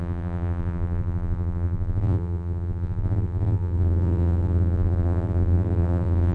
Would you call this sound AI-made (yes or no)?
yes